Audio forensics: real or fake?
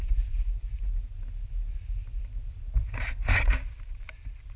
real